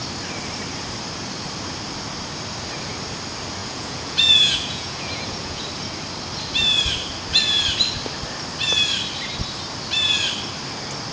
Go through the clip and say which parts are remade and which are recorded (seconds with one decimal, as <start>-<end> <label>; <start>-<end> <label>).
0.0-3.6 recorded; 3.6-5.6 remade; 5.6-11.1 recorded